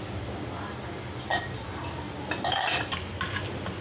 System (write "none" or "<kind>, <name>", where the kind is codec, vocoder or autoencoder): none